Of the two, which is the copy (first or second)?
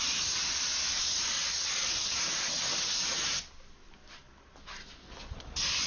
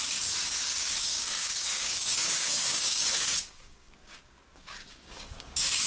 second